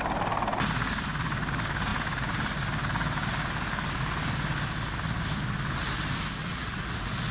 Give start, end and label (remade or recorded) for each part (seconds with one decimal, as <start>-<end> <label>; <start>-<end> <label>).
0.0-6.4 recorded; 6.4-7.3 remade